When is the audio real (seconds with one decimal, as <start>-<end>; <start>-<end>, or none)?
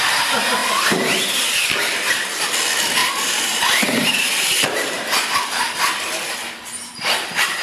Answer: 0.0-3.0; 5.6-7.6